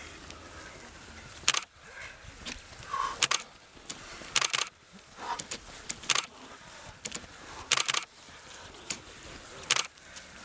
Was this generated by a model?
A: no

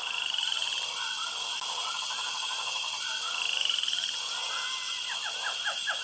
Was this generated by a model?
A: no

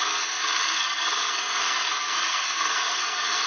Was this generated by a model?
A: yes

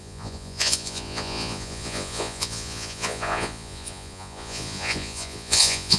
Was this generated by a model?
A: yes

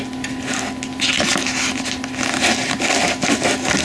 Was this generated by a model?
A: no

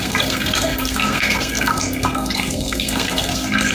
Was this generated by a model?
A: yes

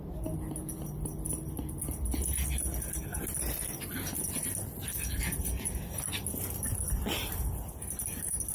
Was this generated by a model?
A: no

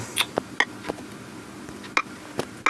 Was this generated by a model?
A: no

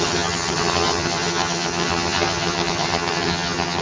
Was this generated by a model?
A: yes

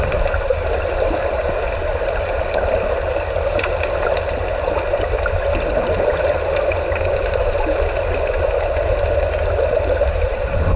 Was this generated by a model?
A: no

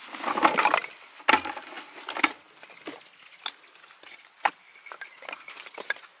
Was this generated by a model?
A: no